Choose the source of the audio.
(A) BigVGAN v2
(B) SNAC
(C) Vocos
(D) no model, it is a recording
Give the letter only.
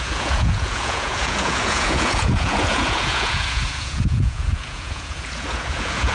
C